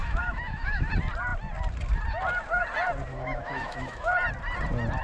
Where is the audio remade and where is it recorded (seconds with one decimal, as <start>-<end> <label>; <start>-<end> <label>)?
0.0-0.9 remade; 0.9-3.1 recorded; 3.1-4.1 remade; 4.1-5.0 recorded